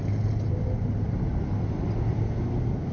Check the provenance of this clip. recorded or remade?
recorded